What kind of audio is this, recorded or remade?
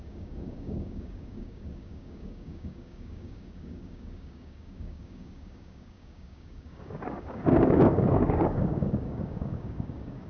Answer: remade